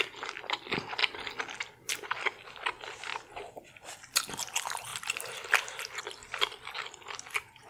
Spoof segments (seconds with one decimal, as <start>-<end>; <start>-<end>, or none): none